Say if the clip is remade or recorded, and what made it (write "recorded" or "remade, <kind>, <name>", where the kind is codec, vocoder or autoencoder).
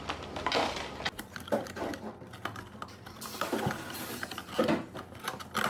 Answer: recorded